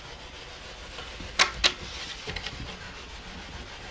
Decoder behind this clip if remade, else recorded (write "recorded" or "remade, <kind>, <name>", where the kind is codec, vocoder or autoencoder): recorded